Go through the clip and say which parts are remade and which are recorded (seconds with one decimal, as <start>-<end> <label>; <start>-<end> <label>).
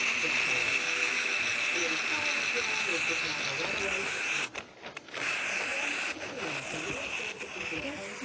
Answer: 0.0-0.6 recorded; 0.6-1.3 remade; 1.3-8.2 recorded